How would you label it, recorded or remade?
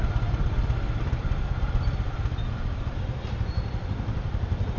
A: recorded